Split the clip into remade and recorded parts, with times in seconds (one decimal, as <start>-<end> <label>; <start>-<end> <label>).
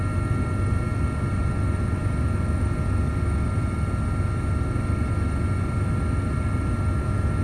0.0-7.4 recorded